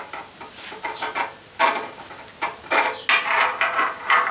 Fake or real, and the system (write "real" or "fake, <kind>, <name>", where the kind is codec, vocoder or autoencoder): real